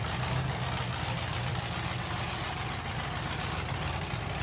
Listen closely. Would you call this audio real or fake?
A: real